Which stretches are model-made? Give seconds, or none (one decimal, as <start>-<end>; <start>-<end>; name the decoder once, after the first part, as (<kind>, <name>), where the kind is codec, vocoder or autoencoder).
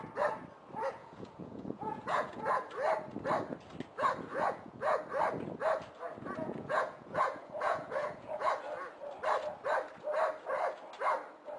1.0-2.7 (vocoder, Vocos); 4.3-5.0; 6.4-8.5